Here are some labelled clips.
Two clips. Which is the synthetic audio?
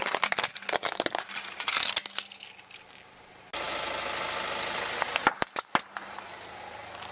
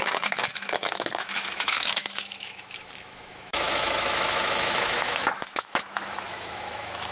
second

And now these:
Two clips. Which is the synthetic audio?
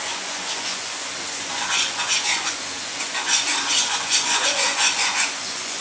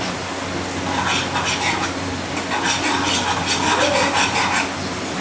first